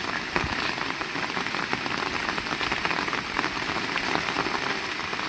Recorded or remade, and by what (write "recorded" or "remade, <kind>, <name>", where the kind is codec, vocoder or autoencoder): recorded